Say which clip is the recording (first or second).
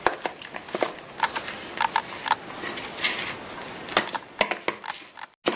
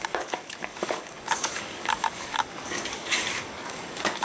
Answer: first